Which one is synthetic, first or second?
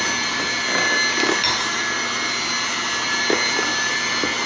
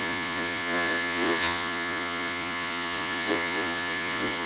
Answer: second